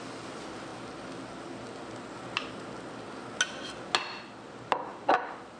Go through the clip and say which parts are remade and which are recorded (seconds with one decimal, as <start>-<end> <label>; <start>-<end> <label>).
0.0-5.6 recorded